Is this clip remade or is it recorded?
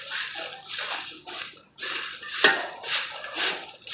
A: recorded